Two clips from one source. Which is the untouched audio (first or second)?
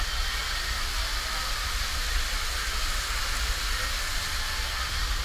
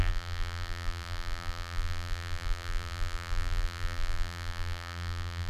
first